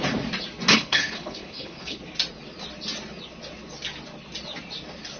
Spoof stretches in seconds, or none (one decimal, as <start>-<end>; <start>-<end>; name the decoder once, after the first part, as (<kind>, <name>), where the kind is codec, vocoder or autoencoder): 0.7-2.0 (codec, HILCodec)